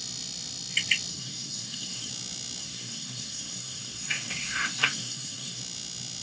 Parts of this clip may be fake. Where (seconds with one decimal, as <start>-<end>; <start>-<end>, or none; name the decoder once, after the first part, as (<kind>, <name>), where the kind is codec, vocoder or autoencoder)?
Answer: 1.1-2.1 (codec, SNAC); 2.6-5.6